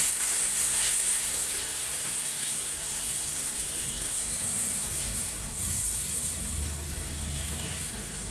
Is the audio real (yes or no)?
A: no